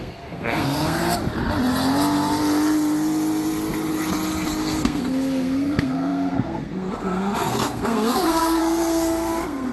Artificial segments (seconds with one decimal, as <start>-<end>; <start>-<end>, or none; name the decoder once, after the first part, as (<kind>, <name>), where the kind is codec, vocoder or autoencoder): 0.0-1.0 (codec, SNAC); 4.6-9.7